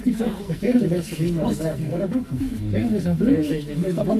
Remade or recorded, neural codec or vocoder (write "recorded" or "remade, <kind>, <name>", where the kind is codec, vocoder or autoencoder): remade, codec, SNAC